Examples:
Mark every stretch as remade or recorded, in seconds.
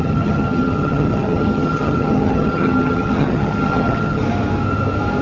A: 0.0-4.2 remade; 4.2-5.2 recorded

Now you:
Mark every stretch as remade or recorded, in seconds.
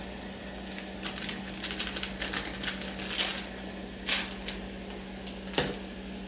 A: 0.0-6.3 recorded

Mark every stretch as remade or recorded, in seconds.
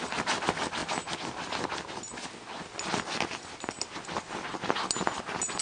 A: 0.0-5.6 recorded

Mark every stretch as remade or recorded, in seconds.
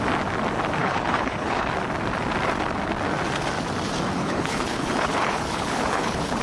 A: 0.0-0.8 recorded; 0.8-1.7 remade; 1.7-4.2 recorded; 4.2-6.4 remade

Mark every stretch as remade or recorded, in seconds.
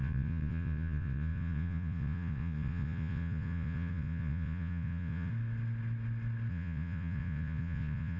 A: 0.0-5.3 remade; 5.3-6.5 recorded; 6.5-8.2 remade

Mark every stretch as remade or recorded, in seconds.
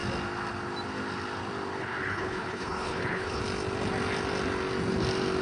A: 0.0-1.8 recorded; 1.8-3.4 remade; 3.4-5.4 recorded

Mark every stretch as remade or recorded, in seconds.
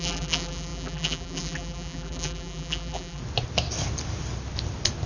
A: 0.0-3.2 remade; 3.2-5.1 recorded